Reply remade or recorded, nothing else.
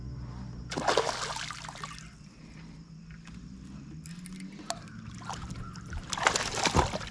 recorded